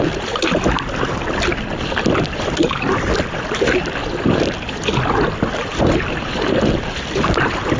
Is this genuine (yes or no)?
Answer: yes